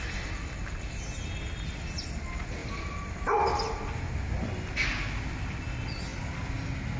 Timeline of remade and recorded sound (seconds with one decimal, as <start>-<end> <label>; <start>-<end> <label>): 0.0-7.0 recorded